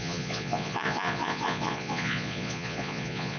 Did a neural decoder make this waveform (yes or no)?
yes